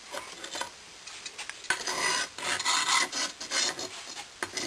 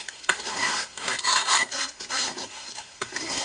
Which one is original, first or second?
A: first